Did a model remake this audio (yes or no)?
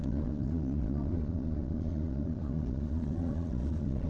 yes